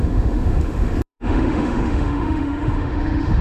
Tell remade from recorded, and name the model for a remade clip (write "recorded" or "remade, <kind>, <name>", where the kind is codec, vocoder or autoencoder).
remade, autoencoder, DAC-VAE